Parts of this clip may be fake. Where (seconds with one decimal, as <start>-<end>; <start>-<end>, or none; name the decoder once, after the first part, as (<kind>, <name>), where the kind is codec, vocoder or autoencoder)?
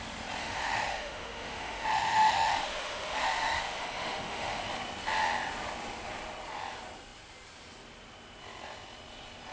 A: 0.4-4.7 (autoencoder, DAC-VAE)